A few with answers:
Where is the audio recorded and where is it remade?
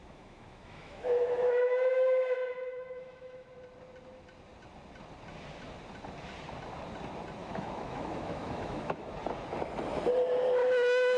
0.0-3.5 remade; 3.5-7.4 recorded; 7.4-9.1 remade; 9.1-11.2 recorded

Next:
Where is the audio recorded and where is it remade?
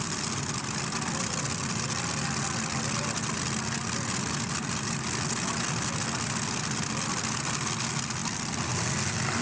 0.0-9.4 recorded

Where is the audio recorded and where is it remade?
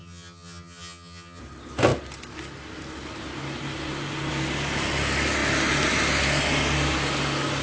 0.0-1.4 remade; 1.4-7.6 recorded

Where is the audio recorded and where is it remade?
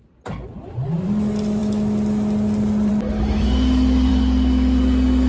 0.0-5.3 recorded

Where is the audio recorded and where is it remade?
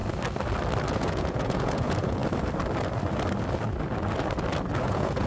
0.0-0.9 recorded; 0.9-2.2 remade; 2.2-4.8 recorded; 4.8-5.3 remade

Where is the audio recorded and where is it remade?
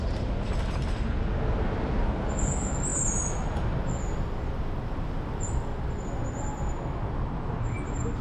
0.0-8.2 recorded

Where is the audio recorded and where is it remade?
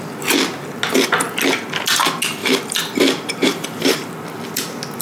0.0-2.4 recorded; 2.4-4.1 remade; 4.1-5.0 recorded